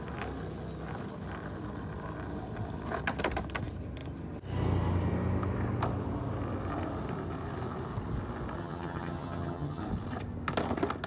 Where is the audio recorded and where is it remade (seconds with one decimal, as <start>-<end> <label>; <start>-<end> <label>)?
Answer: 0.0-8.6 recorded; 8.6-9.8 remade; 9.8-11.1 recorded